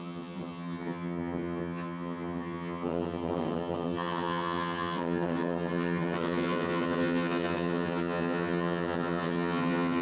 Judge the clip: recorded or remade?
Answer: remade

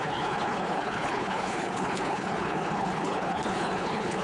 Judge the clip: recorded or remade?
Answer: remade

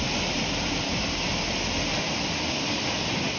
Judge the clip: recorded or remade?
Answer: remade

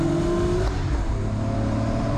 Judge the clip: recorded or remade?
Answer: recorded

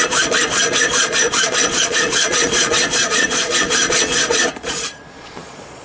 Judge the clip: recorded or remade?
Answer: remade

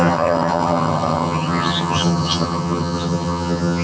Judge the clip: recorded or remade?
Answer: remade